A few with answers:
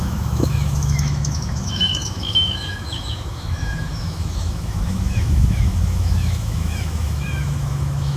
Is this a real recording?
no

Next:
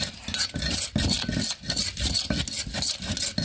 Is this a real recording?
yes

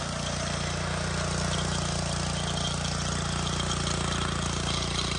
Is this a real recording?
yes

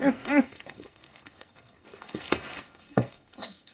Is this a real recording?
no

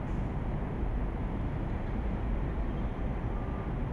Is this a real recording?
yes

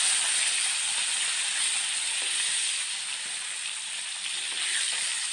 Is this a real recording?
yes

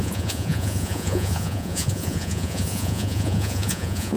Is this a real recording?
no